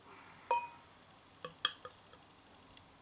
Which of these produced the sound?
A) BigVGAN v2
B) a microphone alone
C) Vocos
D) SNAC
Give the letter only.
B